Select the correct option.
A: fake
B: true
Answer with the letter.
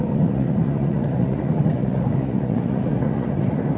A